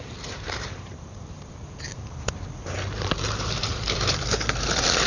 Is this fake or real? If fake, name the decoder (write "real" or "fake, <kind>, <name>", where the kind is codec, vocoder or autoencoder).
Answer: fake, vocoder, BigVGAN v2